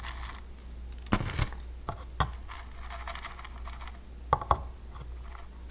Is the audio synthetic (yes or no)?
no